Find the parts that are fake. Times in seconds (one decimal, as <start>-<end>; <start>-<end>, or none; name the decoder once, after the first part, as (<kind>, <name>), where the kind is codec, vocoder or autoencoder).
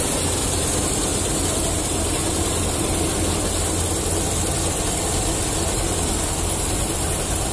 none